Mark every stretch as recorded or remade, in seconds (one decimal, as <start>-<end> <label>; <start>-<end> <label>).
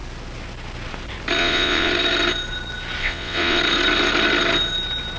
0.0-1.4 recorded; 1.4-1.9 remade; 1.9-3.0 recorded; 3.0-3.6 remade; 3.6-5.2 recorded